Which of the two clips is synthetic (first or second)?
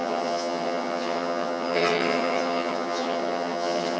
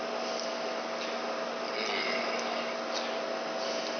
first